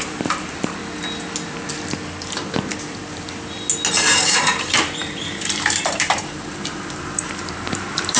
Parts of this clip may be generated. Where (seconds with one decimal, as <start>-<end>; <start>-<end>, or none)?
0.0-0.8; 3.9-8.2